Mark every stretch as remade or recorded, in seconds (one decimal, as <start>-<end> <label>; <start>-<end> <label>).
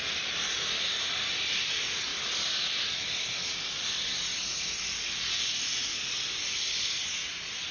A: 0.0-7.7 recorded